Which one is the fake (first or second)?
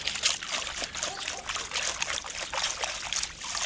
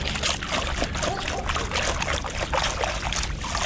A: first